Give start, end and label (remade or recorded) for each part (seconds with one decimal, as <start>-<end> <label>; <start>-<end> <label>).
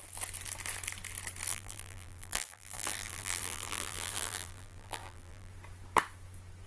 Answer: 0.0-1.5 recorded; 1.5-5.5 remade; 5.5-6.7 recorded